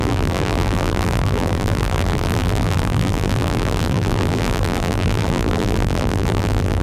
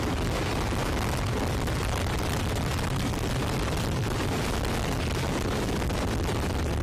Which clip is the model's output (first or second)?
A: first